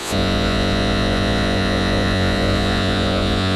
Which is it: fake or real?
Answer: fake